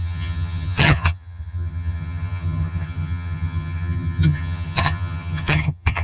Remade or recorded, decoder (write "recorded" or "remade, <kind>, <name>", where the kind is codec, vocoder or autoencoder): remade, vocoder, HiFi-GAN